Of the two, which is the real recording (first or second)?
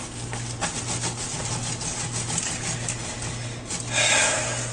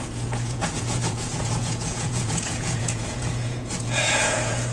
first